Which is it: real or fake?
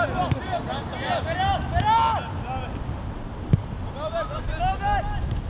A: real